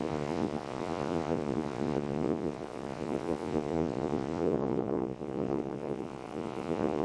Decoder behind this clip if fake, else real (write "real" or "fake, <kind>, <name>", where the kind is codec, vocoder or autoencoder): fake, vocoder, Vocos